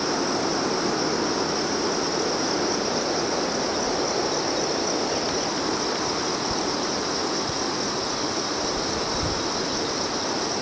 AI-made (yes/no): no